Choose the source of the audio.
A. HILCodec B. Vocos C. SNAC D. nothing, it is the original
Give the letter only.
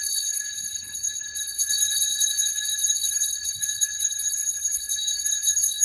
A